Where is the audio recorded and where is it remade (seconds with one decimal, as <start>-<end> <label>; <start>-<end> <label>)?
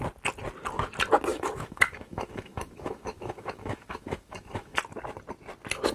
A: 0.0-1.3 recorded; 1.3-4.8 remade; 4.8-5.9 recorded